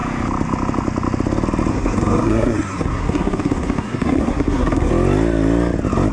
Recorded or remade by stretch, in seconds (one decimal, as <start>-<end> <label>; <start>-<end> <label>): 0.0-1.7 recorded; 1.7-4.9 remade; 4.9-6.1 recorded